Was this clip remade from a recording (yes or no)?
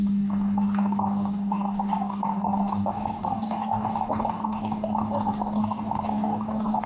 yes